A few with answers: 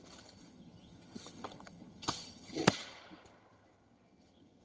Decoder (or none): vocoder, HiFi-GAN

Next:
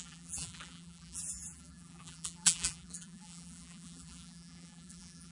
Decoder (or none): vocoder, BigVGAN v2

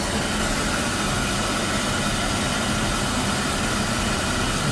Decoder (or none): none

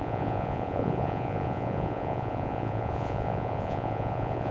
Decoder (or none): vocoder, Vocos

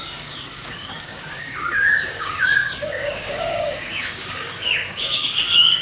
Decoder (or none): codec, DAC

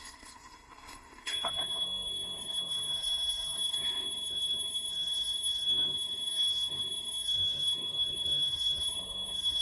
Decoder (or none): codec, SNAC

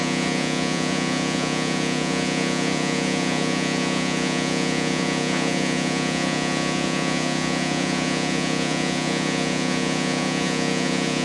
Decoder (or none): vocoder, Vocos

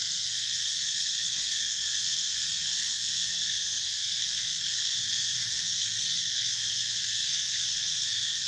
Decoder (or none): codec, SNAC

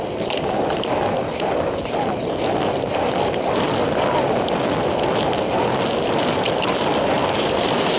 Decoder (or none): none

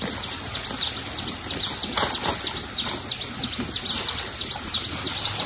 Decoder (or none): none